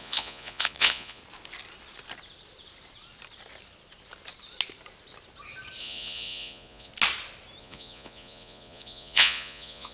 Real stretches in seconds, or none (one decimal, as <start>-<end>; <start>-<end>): 1.2-5.8; 6.9-7.6